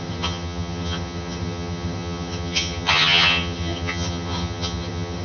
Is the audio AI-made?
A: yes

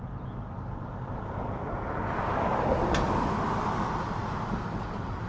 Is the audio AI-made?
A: no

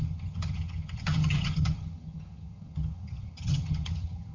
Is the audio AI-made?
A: yes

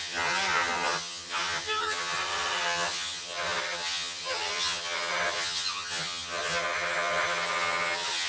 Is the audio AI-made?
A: yes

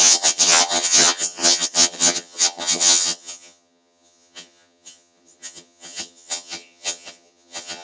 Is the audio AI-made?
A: yes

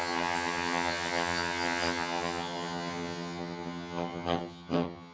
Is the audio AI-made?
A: yes